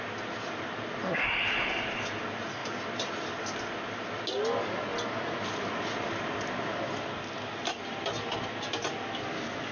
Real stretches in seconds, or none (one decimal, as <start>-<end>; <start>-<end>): 0.0-9.7